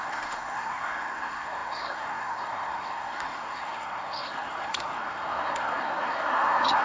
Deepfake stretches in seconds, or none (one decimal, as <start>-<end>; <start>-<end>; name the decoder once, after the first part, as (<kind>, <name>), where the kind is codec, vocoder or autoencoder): 0.0-6.8 (codec, SNAC)